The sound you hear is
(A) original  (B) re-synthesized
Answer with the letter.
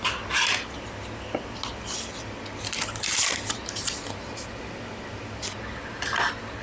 A